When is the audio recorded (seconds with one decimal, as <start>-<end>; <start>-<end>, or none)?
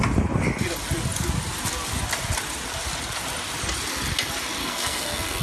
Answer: 0.0-4.6